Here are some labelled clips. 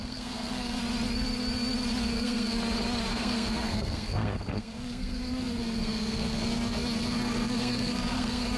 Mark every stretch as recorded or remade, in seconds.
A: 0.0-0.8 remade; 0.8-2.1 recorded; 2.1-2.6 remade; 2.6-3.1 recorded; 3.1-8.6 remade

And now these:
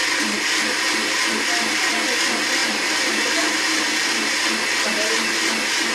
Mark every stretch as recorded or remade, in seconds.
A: 0.0-2.6 recorded; 2.6-3.7 remade; 3.7-5.9 recorded

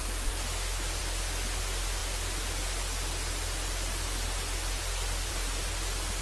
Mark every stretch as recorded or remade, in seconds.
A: 0.0-6.2 recorded

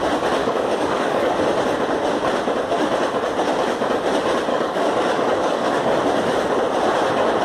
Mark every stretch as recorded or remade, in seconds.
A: 0.0-0.4 recorded; 0.4-1.4 remade; 1.4-4.5 recorded; 4.5-5.9 remade; 5.9-7.4 recorded

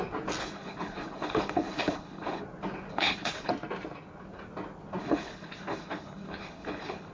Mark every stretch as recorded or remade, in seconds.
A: 0.0-0.4 recorded; 0.4-2.4 remade; 2.4-2.9 recorded; 2.9-3.5 remade; 3.5-5.0 recorded; 5.0-7.1 remade

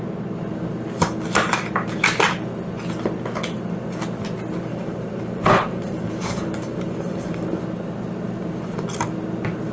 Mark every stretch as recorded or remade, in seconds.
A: 0.0-4.7 recorded; 4.7-7.6 remade; 7.6-9.7 recorded

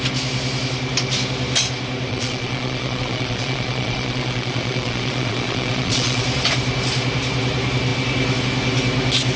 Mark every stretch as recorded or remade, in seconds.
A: 0.0-2.1 recorded; 2.1-6.2 remade; 6.2-9.4 recorded

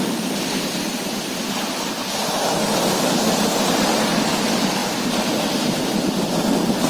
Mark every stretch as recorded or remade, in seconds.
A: 0.0-6.9 recorded